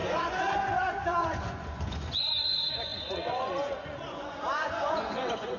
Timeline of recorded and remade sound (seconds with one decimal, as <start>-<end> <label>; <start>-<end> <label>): 0.0-5.6 remade